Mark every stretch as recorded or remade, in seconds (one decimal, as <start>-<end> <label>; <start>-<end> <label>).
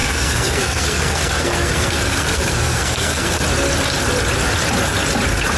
0.0-3.4 remade; 3.4-5.6 recorded